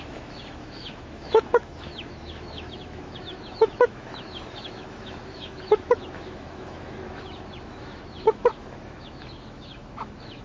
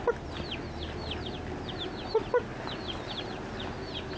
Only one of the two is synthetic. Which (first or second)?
first